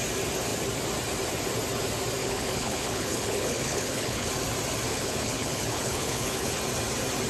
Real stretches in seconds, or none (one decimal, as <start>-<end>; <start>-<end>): 0.0-2.2; 4.3-4.9; 6.5-7.3